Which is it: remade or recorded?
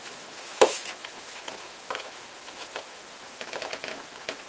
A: remade